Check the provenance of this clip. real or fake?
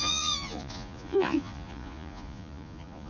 fake